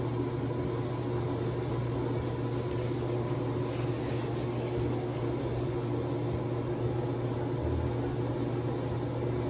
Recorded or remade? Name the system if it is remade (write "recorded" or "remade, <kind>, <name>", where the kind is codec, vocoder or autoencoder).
recorded